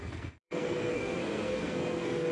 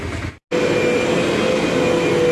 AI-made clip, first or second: first